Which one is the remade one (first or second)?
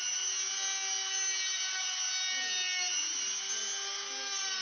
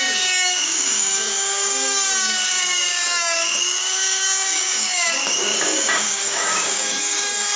second